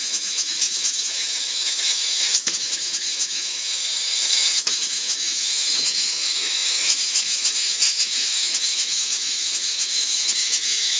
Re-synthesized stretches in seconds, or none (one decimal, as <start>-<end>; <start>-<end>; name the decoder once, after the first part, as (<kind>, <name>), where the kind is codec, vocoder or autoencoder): 0.0-11.0 (autoencoder, DAC-VAE)